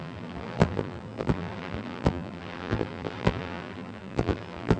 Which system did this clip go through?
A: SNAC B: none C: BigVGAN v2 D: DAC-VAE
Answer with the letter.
C